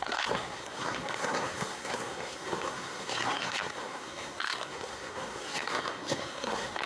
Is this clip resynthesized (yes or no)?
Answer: yes